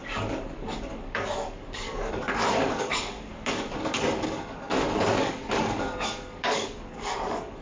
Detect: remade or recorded remade